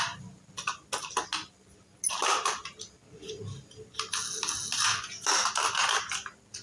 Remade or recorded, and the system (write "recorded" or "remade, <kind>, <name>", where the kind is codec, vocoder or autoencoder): recorded